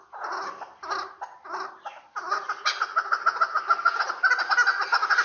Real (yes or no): yes